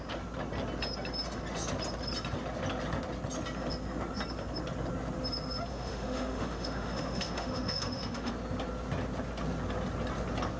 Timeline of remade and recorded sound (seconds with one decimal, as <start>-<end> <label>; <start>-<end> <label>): 0.0-5.7 recorded; 5.7-8.3 remade; 8.3-10.6 recorded